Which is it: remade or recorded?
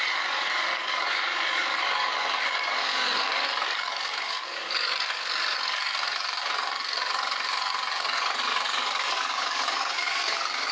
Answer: remade